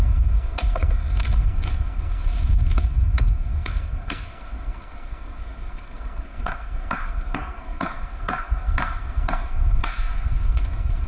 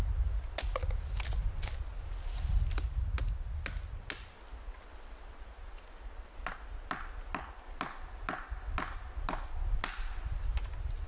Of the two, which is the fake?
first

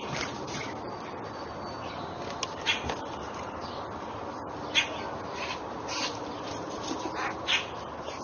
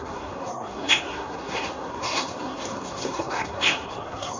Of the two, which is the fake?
second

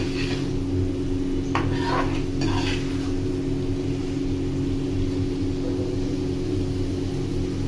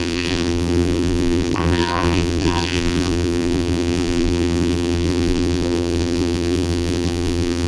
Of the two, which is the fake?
second